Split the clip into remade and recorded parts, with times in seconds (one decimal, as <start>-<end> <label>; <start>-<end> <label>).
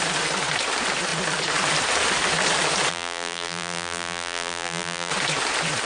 0.0-2.9 recorded; 2.9-5.1 remade; 5.1-5.8 recorded